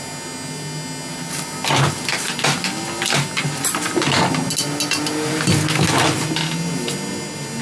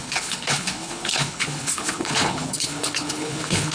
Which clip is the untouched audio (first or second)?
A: first